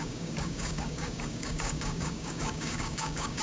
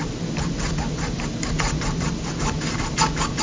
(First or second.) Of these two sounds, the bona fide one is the second